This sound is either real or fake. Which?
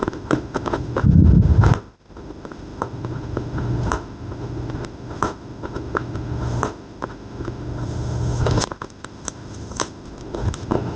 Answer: fake